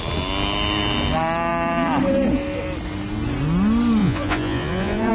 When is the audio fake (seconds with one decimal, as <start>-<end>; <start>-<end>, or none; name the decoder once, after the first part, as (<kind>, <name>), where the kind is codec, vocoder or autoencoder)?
4.0-5.1 (vocoder, Vocos)